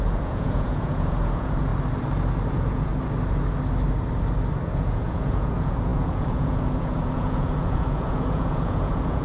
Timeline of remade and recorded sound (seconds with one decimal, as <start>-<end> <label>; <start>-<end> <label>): 0.0-1.7 remade; 1.7-2.5 recorded; 2.5-2.9 remade; 2.9-4.7 recorded; 4.7-9.2 remade

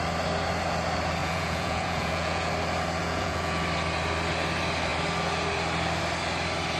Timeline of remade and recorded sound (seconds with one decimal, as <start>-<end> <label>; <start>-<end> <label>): 0.0-1.2 recorded; 1.2-2.5 remade; 2.5-3.0 recorded; 3.0-3.6 remade; 3.6-6.8 recorded

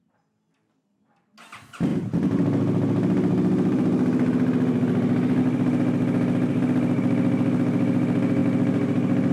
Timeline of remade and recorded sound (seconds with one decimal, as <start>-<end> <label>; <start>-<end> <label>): 0.0-9.3 recorded

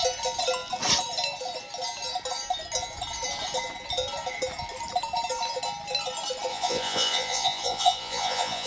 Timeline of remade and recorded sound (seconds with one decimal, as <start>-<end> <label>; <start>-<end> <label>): 0.0-6.5 recorded; 6.5-8.7 remade

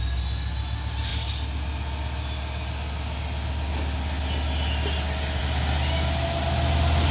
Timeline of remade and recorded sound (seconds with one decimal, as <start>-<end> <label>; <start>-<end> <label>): 0.0-7.1 recorded

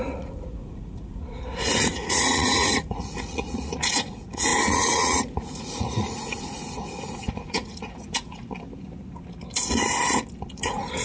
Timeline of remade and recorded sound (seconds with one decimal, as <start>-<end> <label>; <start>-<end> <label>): 0.0-8.4 remade; 8.4-10.5 recorded; 10.5-11.0 remade

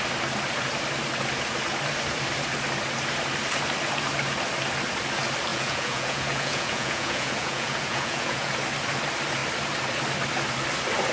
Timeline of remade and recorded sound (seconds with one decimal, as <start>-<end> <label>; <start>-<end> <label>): 0.0-5.5 recorded; 5.5-8.5 remade; 8.5-11.1 recorded